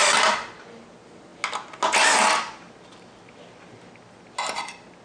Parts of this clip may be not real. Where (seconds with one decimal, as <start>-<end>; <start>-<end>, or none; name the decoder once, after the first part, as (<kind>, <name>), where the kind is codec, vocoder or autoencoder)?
none